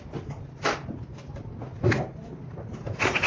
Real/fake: real